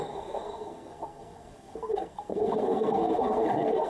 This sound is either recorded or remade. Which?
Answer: remade